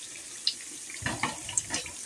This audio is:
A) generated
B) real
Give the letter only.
B